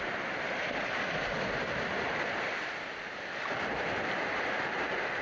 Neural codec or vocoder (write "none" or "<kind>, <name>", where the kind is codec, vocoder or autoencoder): vocoder, BigVGAN v2